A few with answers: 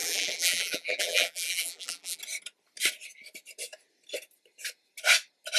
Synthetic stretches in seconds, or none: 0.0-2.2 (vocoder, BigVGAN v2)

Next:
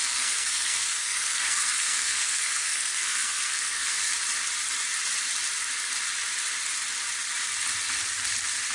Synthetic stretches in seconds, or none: 0.0-4.1 (codec, SNAC)

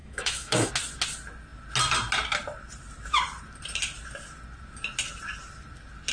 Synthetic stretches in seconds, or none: 0.0-0.7 (autoencoder, DAC-VAE)

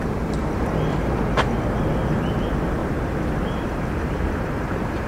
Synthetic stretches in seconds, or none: 0.9-1.6 (vocoder, BigVGAN v2); 2.8-5.1

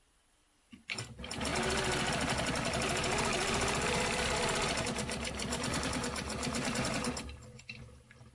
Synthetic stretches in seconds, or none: 3.3-7.2 (vocoder, BigVGAN v2)

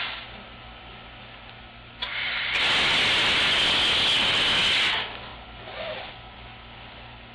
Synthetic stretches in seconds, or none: none

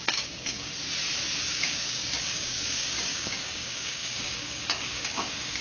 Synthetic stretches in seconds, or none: 0.0-0.7 (codec, DAC); 1.5-5.6